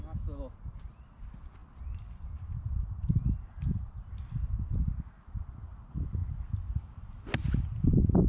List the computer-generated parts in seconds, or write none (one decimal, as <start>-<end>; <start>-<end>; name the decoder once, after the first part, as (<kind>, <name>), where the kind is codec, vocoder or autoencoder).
none